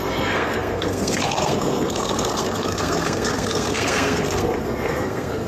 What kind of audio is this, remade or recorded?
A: remade